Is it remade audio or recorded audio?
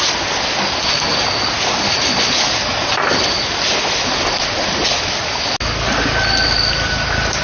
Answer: recorded